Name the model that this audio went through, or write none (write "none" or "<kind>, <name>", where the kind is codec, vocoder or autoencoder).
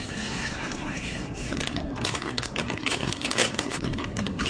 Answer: codec, SNAC